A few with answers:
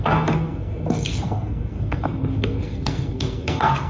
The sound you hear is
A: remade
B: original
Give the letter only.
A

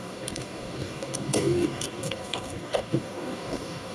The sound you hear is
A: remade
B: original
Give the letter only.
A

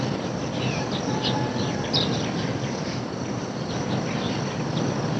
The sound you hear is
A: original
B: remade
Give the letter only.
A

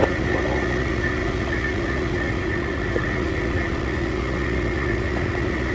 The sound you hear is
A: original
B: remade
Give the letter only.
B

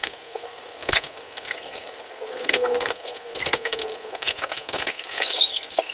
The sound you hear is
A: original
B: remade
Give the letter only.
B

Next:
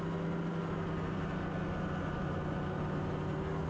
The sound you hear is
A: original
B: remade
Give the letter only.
A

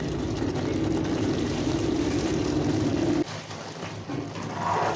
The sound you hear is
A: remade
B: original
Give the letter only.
B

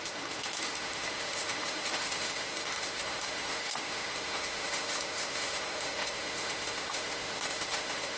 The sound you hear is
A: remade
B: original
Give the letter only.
A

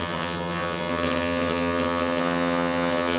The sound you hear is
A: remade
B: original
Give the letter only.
A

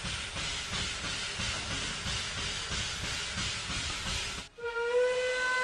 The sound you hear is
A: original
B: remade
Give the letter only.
A